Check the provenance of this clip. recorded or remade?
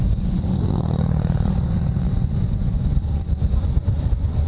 remade